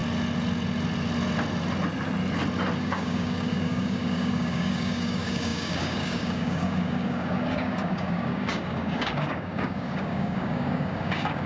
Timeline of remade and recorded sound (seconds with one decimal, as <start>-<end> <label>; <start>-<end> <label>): 0.0-2.8 recorded; 2.8-11.5 remade